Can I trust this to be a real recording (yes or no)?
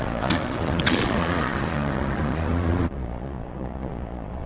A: no